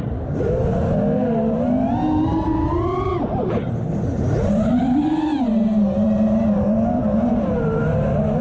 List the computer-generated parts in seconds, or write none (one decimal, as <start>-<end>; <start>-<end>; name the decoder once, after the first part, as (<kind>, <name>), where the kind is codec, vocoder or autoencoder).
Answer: 0.0-0.8 (vocoder, BigVGAN v2); 1.4-8.4